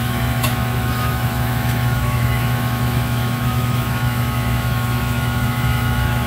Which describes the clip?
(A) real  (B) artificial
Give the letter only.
B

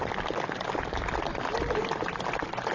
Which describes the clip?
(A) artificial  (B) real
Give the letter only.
B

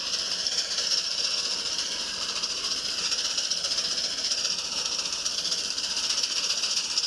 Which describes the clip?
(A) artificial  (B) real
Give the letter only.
B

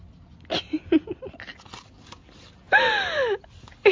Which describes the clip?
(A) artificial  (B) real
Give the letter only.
B